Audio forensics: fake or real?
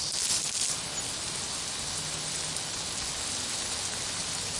real